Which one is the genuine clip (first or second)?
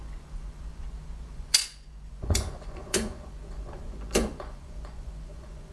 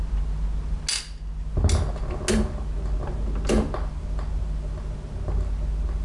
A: second